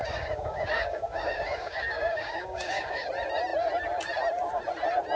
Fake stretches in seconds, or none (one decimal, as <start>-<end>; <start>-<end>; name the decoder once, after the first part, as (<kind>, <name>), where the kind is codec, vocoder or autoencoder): 0.0-3.1 (codec, DAC)